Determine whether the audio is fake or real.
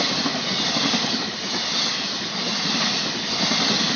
real